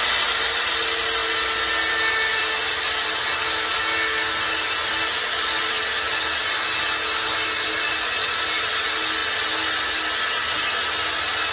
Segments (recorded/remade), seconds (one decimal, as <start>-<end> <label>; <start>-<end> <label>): 0.0-11.5 recorded